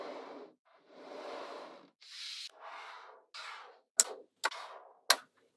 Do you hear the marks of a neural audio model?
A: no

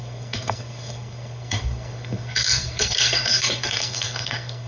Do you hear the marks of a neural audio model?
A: yes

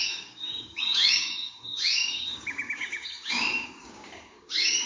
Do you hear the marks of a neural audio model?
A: yes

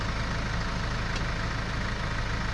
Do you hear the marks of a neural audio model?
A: no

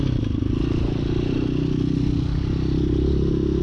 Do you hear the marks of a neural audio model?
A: no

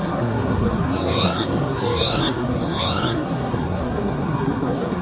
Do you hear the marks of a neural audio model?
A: yes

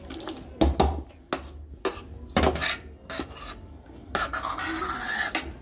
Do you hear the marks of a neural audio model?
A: no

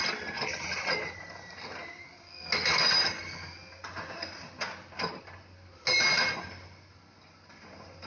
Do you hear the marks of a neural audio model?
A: no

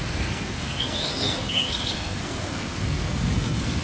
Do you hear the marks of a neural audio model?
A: yes